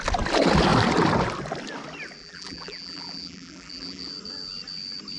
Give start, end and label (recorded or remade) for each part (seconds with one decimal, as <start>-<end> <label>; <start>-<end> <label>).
0.0-2.2 recorded; 2.2-4.1 remade; 4.1-5.2 recorded